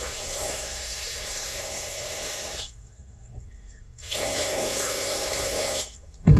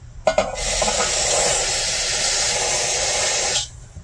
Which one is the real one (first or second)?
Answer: second